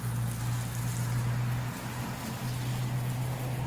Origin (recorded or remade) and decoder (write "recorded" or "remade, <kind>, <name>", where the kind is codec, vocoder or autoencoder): recorded